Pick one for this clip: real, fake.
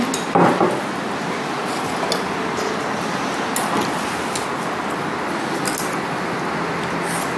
real